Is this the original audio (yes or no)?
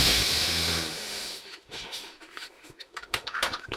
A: no